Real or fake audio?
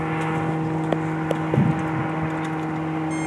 real